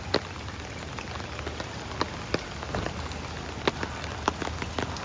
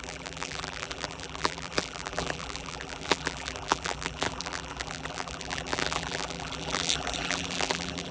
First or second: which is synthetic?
second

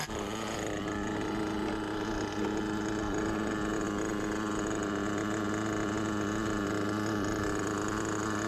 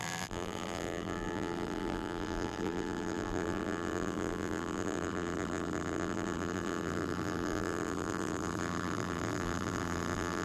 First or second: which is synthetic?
second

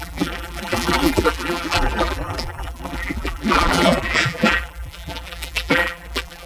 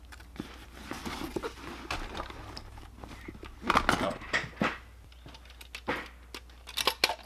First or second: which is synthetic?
first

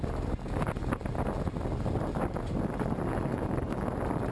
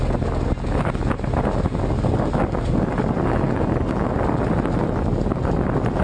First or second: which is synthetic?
first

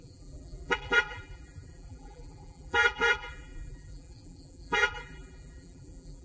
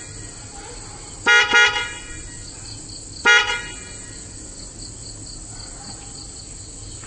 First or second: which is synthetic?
first